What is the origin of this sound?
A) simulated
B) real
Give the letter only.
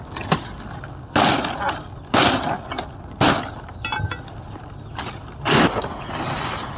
B